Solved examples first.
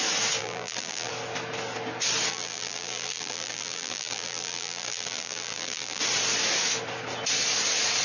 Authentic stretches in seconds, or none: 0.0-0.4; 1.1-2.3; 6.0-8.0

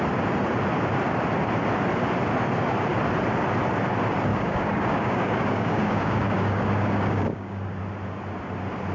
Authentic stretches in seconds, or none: 0.0-4.3; 7.8-8.9

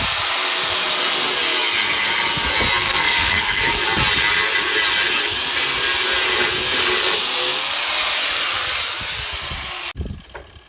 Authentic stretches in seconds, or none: 0.0-2.8; 3.7-10.7

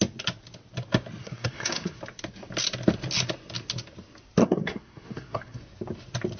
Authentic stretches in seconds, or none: 0.0-1.2; 2.0-4.4; 5.6-6.4